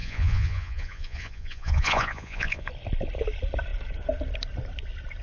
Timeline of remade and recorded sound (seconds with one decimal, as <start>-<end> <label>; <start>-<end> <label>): 0.0-2.7 remade; 2.7-5.2 recorded